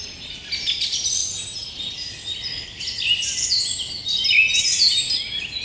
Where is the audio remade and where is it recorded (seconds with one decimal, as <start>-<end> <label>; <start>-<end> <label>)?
0.0-5.6 recorded